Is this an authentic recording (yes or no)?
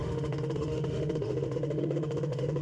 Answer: no